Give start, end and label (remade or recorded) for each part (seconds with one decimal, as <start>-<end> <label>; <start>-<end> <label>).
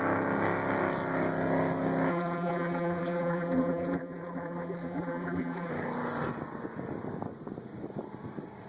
0.0-2.1 recorded; 2.1-5.7 remade; 5.7-8.7 recorded